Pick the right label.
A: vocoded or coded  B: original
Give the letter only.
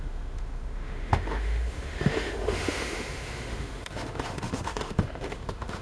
A